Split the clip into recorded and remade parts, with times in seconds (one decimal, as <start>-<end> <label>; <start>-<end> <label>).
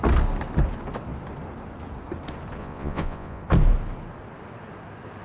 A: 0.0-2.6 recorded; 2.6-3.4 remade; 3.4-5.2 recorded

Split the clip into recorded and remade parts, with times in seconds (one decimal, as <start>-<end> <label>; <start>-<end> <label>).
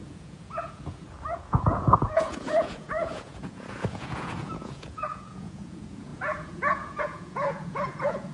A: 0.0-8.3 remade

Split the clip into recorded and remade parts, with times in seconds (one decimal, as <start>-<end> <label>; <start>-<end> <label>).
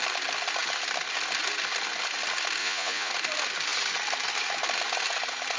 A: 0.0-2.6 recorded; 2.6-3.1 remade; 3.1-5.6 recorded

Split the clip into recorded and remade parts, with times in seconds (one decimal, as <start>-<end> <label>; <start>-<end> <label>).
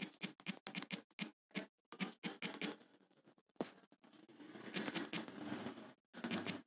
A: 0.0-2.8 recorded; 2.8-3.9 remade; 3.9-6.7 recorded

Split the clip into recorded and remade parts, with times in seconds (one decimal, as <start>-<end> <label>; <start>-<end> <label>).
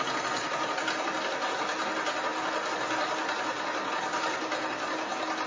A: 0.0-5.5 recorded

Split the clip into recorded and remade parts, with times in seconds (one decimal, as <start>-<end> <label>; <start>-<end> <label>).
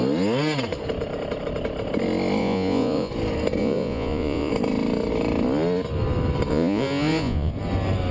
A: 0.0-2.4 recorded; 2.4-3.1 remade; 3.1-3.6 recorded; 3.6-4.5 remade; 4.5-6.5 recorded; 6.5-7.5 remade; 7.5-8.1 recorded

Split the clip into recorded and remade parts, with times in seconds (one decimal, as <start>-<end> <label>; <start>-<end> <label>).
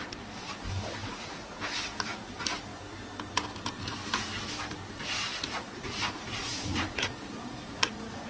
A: 0.0-1.0 recorded; 1.0-1.6 remade; 1.6-5.3 recorded; 5.3-8.3 remade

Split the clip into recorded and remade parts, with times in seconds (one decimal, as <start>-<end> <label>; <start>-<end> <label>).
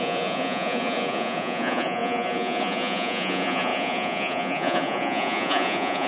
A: 0.0-6.1 remade